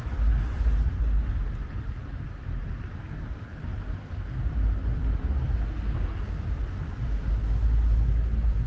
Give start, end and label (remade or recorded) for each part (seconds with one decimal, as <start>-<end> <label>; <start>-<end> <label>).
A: 0.0-8.7 recorded

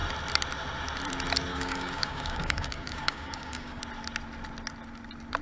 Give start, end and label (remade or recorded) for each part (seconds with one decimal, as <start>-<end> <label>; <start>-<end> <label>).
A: 0.0-1.5 recorded; 1.5-3.8 remade; 3.8-5.4 recorded

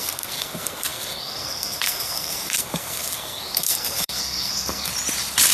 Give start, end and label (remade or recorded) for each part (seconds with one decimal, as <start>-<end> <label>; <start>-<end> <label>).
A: 0.0-4.9 remade; 4.9-5.5 recorded